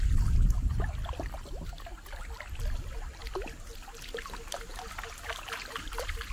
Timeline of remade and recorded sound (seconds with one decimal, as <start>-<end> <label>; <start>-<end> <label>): 0.0-6.3 recorded